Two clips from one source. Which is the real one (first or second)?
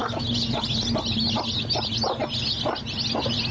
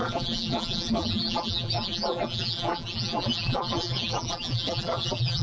first